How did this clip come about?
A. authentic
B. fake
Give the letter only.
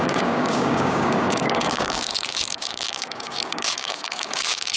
B